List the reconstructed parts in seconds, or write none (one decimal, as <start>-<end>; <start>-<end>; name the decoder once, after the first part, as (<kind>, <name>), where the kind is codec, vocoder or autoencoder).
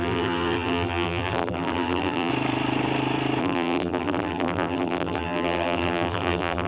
0.0-2.3 (vocoder, BigVGAN v2); 3.4-6.7